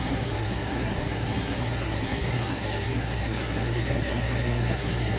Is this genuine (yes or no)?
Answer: no